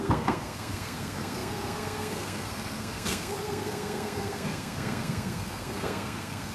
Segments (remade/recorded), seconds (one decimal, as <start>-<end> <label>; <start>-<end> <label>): 0.0-6.5 remade